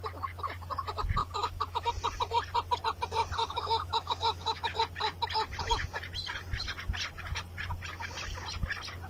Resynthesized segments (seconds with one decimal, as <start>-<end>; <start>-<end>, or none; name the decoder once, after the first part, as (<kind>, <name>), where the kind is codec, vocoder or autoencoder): 1.2-1.9 (autoencoder, DAC-VAE); 3.4-4.8